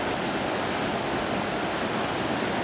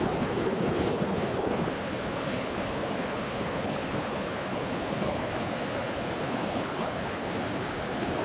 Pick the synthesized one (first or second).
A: second